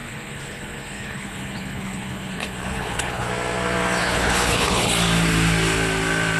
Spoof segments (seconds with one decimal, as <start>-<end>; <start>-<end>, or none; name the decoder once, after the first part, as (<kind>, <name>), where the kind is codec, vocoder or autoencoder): 0.0-3.3 (codec, HILCodec); 4.0-4.9

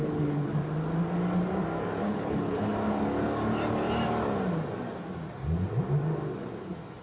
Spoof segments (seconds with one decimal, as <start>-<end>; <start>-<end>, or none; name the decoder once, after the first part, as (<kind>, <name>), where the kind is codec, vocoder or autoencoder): 0.0-0.5 (codec, HILCodec); 2.0-2.7

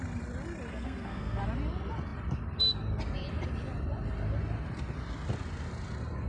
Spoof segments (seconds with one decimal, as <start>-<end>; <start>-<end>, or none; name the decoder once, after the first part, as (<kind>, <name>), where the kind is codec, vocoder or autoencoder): 0.7-1.4 (codec, SNAC)

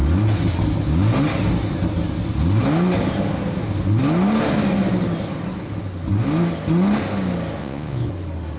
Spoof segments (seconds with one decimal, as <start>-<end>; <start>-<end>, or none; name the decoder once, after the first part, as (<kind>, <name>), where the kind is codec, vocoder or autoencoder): 7.6-8.1 (vocoder, Vocos)

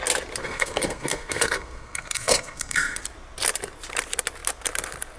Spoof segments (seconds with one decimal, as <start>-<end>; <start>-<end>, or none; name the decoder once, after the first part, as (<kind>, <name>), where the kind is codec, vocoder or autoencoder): 0.4-3.0 (codec, SNAC)

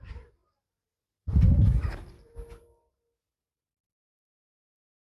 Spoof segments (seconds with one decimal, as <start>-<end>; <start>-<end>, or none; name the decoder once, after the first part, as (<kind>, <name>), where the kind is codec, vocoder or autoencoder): 0.0-5.1 (vocoder, BigVGAN v2)